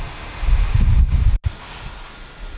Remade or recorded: recorded